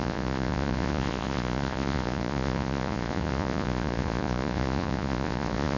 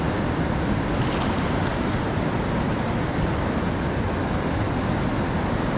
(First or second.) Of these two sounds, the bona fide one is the second